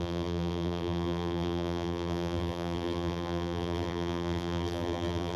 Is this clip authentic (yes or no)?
no